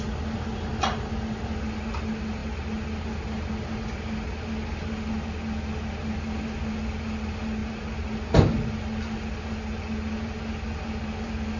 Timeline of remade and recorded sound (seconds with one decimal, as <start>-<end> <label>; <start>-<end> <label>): 0.0-11.6 recorded

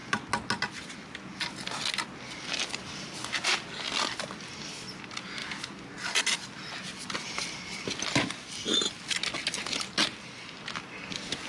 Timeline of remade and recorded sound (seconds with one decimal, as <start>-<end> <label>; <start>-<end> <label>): 0.0-11.5 recorded

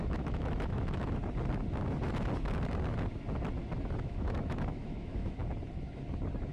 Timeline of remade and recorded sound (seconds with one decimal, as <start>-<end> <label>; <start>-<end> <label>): 0.0-1.2 remade; 1.2-4.0 recorded; 4.0-5.4 remade; 5.4-6.5 recorded

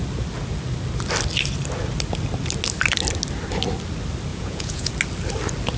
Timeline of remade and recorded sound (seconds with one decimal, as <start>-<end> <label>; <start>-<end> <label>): 0.0-4.3 recorded; 4.3-4.9 remade; 4.9-5.8 recorded